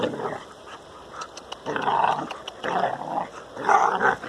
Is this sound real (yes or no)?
yes